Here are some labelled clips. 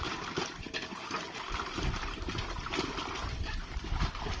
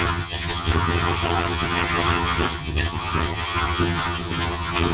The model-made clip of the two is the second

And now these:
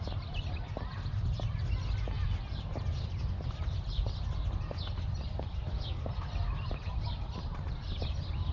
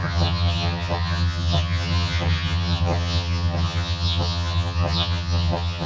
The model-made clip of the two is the second